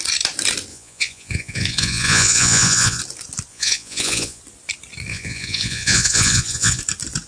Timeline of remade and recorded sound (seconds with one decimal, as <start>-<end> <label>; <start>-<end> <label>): 0.0-0.7 recorded; 0.7-3.0 remade; 3.0-3.5 recorded; 3.5-4.4 remade; 4.4-5.1 recorded; 5.1-6.8 remade; 6.8-7.3 recorded